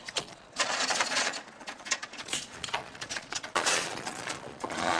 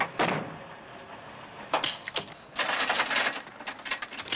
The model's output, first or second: first